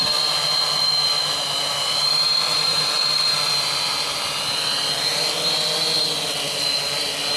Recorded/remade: recorded